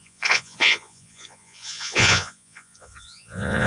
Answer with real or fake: fake